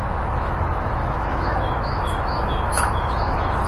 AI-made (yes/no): yes